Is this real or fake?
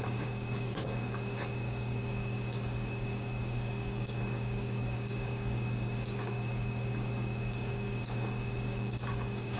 fake